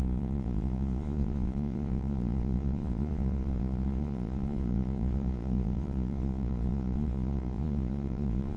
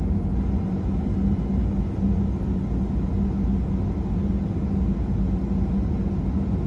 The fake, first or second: first